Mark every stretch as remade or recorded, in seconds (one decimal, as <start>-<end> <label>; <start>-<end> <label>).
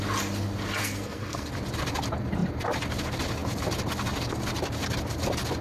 0.0-0.8 recorded; 0.8-1.5 remade; 1.5-5.6 recorded